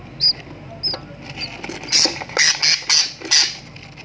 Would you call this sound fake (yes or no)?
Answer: no